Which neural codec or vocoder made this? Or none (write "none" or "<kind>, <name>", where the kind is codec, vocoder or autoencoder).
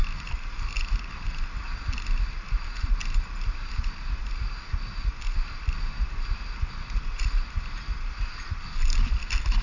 none